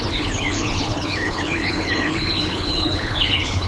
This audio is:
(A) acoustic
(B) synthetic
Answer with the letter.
B